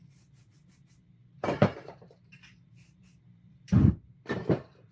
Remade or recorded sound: remade